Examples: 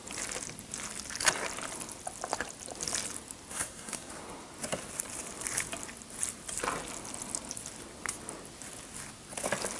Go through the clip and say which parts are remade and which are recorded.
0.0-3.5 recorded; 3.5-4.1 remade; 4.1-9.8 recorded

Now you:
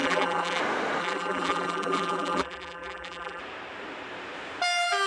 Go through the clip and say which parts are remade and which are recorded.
0.0-0.6 remade; 0.6-1.0 recorded; 1.0-3.4 remade; 3.4-5.1 recorded

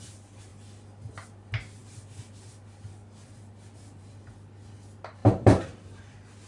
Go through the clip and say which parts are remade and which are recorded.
0.0-5.2 recorded; 5.2-6.0 remade; 6.0-6.5 recorded

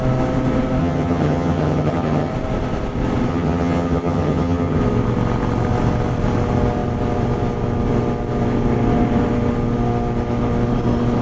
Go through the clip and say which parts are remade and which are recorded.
0.0-0.8 recorded; 0.8-2.3 remade; 2.3-3.3 recorded; 3.3-4.8 remade; 4.8-11.2 recorded

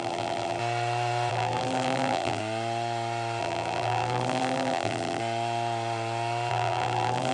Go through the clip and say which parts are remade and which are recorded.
0.0-0.6 remade; 0.6-1.3 recorded; 1.3-2.4 remade; 2.4-3.4 recorded; 3.4-5.2 remade; 5.2-6.5 recorded; 6.5-7.3 remade

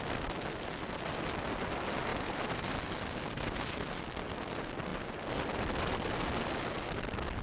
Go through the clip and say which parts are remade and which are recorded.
0.0-7.4 recorded